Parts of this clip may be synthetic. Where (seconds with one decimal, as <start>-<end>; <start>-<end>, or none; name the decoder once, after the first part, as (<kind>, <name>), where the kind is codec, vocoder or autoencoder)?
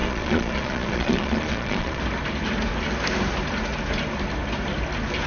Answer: 0.0-2.0 (vocoder, Vocos)